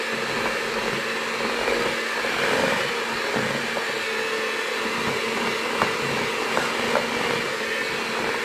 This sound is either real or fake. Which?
real